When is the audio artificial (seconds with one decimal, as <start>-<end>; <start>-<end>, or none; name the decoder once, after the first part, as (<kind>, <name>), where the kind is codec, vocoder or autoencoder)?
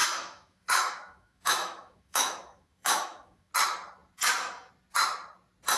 0.0-3.5 (autoencoder, DAC-VAE)